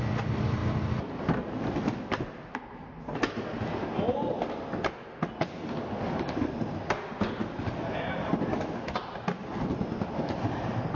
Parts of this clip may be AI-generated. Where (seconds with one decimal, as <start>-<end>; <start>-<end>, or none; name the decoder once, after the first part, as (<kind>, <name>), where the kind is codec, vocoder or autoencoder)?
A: none